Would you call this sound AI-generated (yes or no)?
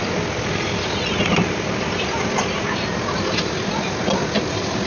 no